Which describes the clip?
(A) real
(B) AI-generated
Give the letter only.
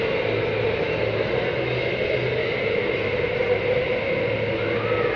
A